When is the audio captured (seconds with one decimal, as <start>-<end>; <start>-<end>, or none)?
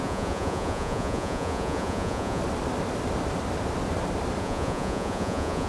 2.4-4.4